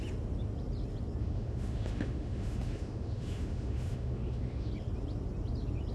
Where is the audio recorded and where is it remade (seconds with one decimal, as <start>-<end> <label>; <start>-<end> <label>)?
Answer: 0.0-1.2 recorded; 1.2-4.7 remade; 4.7-5.9 recorded